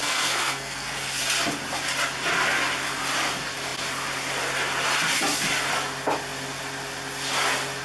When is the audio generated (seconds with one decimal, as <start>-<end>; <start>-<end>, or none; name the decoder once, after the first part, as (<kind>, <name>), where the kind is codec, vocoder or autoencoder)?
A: 0.0-1.2 (codec, SNAC)